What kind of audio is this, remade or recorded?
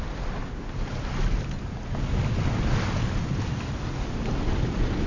recorded